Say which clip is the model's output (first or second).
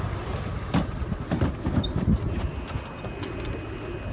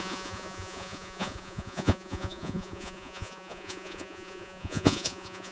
second